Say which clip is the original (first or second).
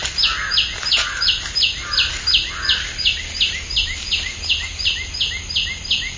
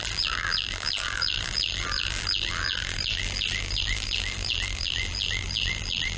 first